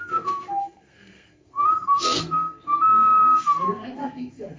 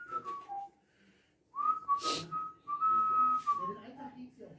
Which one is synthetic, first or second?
first